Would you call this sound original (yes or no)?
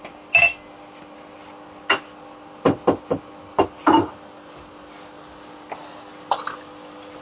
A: yes